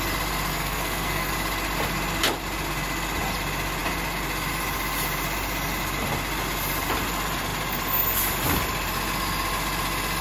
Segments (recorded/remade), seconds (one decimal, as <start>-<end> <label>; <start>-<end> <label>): 0.0-0.5 recorded; 0.5-1.3 remade; 1.3-10.2 recorded